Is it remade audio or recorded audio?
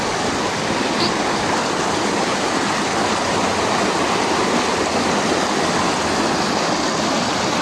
recorded